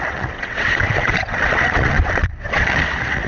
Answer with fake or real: fake